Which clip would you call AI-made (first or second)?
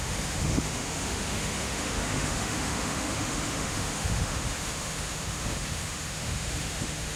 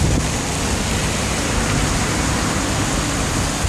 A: first